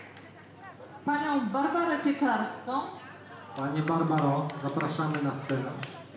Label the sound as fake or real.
real